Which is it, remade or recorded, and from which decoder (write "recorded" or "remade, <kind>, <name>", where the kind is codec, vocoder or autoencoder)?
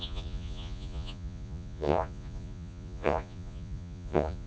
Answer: remade, vocoder, Vocos